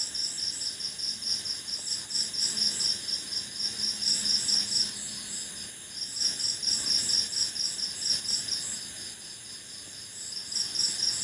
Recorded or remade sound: recorded